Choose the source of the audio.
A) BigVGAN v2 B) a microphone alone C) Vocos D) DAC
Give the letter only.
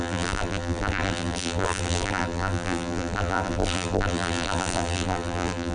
A